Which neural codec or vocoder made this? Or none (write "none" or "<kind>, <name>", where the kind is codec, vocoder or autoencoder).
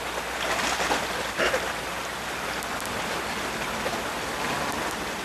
none